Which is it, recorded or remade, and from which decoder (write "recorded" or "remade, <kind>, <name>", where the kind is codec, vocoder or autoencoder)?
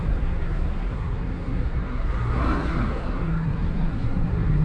remade, codec, SNAC